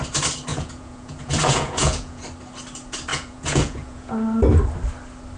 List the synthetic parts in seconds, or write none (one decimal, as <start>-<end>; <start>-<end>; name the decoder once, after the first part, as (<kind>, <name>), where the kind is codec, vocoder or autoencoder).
0.5-2.2 (vocoder, Vocos); 3.1-4.1